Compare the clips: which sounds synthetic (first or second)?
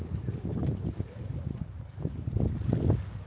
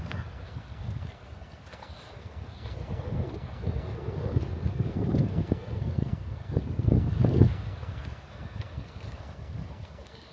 second